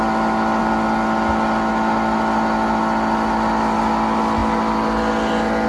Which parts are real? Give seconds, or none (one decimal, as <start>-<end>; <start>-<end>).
0.0-5.7